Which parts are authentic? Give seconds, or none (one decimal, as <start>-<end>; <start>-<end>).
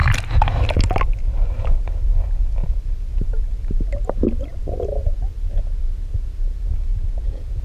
0.0-6.9